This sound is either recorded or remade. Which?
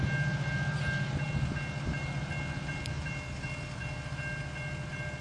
recorded